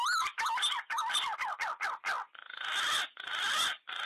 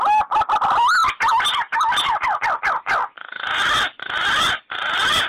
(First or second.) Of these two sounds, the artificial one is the first